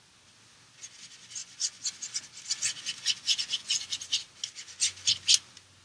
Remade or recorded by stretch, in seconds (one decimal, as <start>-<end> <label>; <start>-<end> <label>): 0.0-1.4 recorded; 1.4-1.9 remade; 1.9-3.0 recorded; 3.0-3.8 remade; 3.8-5.8 recorded